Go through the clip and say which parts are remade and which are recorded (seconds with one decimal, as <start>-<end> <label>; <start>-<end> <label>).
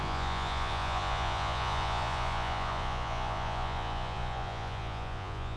0.0-5.6 remade